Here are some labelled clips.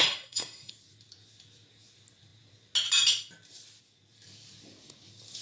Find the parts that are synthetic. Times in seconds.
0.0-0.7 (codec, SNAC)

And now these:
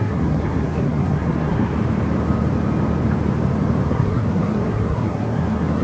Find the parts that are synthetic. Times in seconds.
0.0-1.7 (codec, SNAC); 3.9-5.8

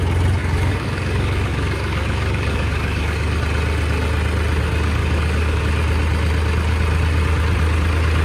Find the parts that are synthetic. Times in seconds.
0.4-3.4 (codec, DAC); 5.0-5.6

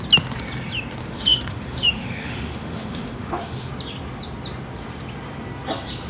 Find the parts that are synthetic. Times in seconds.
1.0-3.7 (autoencoder, DAC-VAE)

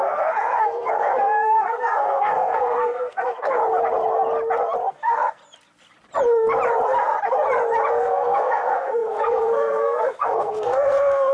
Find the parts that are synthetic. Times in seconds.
0.0-3.6 (codec, SNAC); 4.9-5.4; 7.9-11.3

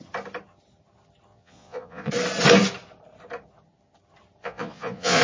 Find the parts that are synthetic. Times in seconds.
1.3-2.1 (vocoder, Vocos); 4.4-5.2

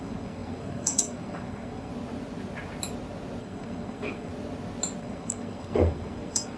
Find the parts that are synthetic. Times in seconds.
0.0-1.9 (codec, SNAC); 3.4-4.3; 5.0-6.6